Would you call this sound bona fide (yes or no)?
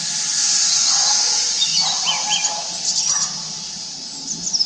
yes